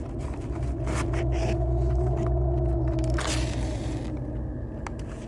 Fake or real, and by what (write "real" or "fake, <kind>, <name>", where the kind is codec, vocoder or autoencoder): real